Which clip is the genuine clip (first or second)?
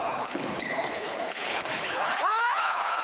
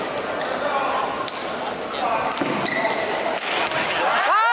second